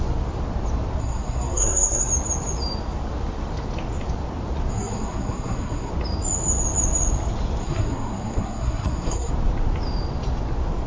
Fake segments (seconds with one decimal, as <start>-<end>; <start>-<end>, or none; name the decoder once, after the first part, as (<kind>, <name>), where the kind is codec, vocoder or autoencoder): 1.0-2.1 (codec, SNAC); 4.7-5.9; 7.6-9.3